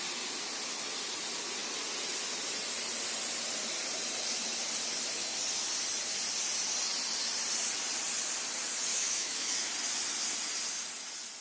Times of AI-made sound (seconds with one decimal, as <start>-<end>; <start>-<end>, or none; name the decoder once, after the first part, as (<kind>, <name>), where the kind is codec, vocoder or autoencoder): 8.9-9.7 (autoencoder, DAC-VAE)